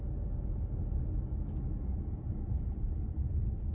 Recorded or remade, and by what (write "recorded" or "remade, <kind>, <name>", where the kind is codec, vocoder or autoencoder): recorded